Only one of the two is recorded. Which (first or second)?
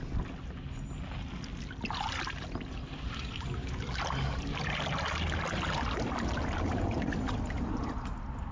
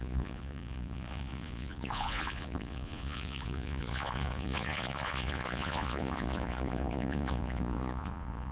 first